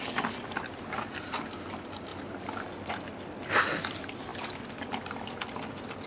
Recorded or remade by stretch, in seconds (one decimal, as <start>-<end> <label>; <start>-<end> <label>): 0.0-6.1 recorded